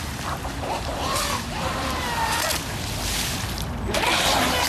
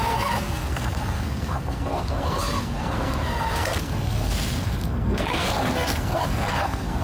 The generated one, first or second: second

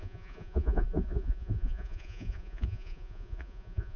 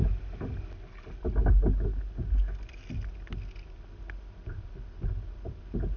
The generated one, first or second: first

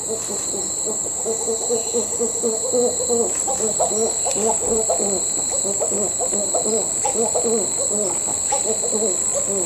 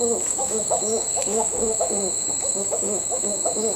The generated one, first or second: second